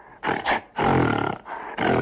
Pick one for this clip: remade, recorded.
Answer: recorded